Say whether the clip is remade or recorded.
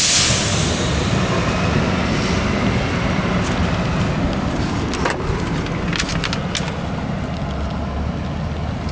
recorded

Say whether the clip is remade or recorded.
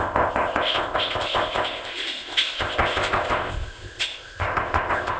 remade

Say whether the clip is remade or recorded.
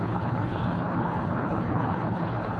remade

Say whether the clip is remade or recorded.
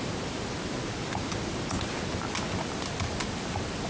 recorded